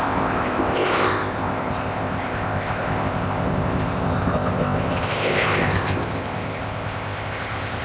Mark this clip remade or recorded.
remade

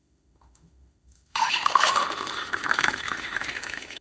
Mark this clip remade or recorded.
remade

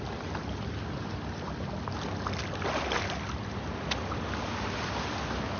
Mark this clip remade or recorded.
recorded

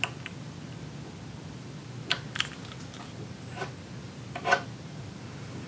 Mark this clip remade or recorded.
recorded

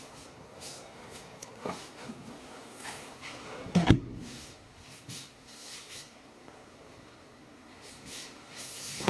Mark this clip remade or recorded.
remade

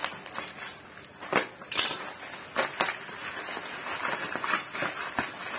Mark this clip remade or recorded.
recorded